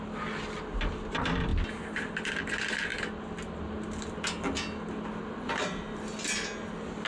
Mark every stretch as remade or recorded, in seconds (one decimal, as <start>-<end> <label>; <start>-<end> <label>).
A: 0.0-7.1 recorded